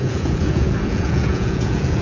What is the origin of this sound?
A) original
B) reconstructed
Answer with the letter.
B